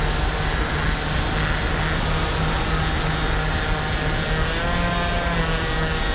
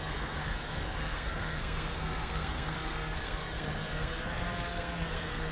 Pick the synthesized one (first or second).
second